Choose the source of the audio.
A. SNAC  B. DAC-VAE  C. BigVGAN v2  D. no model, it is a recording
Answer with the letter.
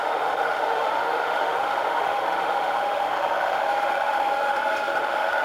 B